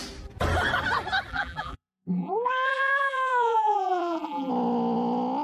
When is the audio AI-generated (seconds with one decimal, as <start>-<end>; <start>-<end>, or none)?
1.3-4.5